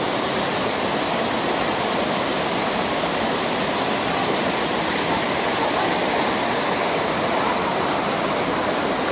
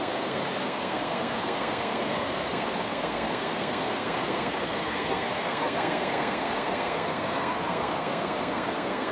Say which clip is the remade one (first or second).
second